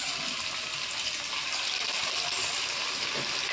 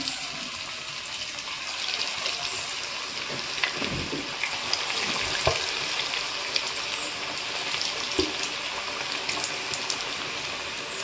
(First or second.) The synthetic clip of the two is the first